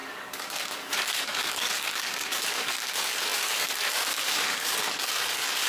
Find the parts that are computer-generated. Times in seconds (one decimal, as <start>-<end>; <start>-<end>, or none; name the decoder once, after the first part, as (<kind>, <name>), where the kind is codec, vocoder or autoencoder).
0.0-5.7 (codec, DAC)